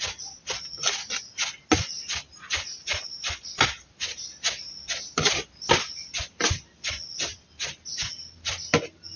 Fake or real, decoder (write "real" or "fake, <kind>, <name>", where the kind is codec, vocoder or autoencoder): real